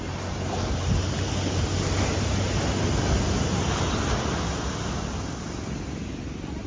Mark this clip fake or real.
real